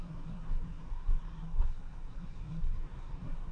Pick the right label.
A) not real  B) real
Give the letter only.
A